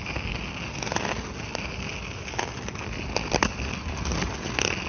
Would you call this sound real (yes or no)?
yes